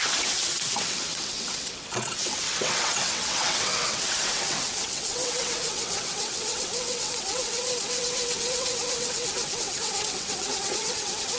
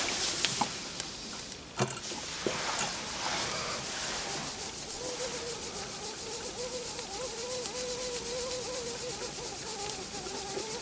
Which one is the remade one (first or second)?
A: first